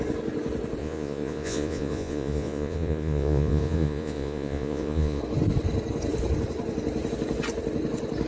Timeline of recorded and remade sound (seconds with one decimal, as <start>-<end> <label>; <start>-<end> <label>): 0.0-0.8 recorded; 0.8-5.2 remade; 5.2-8.3 recorded

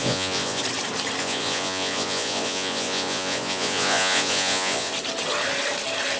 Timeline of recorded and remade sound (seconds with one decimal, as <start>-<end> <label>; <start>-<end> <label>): 0.0-0.6 remade; 0.6-1.2 recorded; 1.2-4.9 remade; 4.9-6.2 recorded

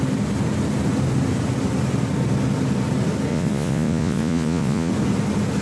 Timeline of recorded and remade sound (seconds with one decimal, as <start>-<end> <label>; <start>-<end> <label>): 0.0-3.3 recorded; 3.3-4.9 remade; 4.9-5.6 recorded

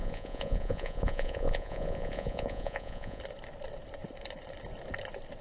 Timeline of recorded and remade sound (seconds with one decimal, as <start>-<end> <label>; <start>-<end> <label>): 0.0-3.2 remade; 3.2-5.4 recorded

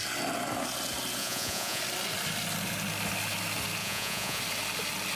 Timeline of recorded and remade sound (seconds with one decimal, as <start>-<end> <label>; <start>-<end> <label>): 0.0-1.2 recorded; 1.2-1.8 remade; 1.8-3.8 recorded; 3.8-4.4 remade; 4.4-5.2 recorded